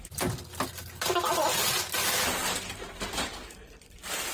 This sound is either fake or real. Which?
real